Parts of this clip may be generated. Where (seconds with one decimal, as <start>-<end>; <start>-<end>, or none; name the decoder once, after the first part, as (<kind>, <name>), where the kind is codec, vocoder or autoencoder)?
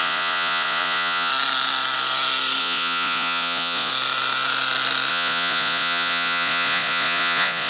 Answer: 0.0-1.3 (vocoder, Vocos); 2.6-3.9; 5.1-7.7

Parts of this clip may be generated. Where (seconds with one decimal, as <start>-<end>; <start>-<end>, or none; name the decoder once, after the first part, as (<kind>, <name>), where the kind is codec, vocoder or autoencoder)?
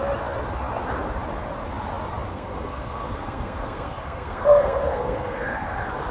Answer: 2.3-6.1 (codec, SNAC)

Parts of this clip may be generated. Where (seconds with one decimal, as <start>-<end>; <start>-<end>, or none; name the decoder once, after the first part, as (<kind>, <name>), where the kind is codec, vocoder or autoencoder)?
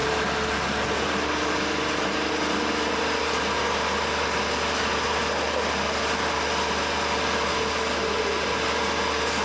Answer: none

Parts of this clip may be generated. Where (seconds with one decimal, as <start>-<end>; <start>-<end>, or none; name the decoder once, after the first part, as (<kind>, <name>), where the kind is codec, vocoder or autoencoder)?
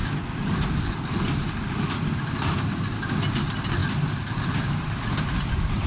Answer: none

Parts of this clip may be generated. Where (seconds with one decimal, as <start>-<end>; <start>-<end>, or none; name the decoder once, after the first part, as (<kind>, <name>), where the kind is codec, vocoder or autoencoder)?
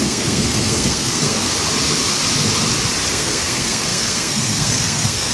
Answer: 0.0-1.5 (codec, SNAC); 3.1-5.3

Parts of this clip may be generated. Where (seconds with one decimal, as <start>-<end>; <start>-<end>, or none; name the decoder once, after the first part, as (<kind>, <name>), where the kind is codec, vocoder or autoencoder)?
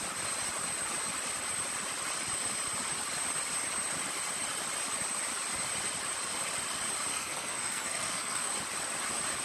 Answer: 7.1-8.5 (codec, SNAC)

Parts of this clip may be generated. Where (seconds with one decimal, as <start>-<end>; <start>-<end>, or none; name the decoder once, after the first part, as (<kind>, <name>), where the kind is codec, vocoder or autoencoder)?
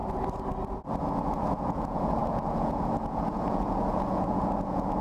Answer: 1.0-5.0 (vocoder, Vocos)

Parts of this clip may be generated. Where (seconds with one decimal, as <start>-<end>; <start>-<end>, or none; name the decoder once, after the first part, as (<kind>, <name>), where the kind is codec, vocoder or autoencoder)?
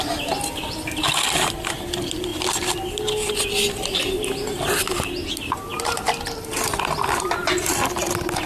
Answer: none